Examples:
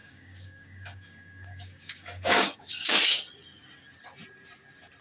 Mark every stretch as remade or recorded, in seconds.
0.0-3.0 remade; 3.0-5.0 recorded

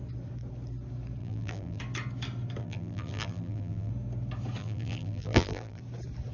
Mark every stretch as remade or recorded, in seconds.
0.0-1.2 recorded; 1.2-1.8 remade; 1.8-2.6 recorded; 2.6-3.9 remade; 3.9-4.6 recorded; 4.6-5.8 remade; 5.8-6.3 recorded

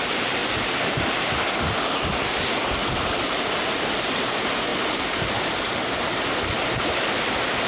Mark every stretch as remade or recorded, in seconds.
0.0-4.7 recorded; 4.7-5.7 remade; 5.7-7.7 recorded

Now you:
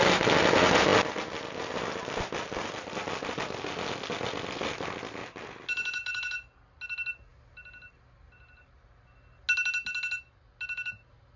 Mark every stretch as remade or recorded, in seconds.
0.0-11.4 recorded